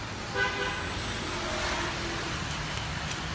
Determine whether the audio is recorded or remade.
recorded